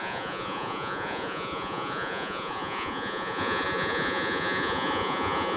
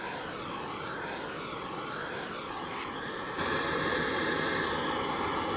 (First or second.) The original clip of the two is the second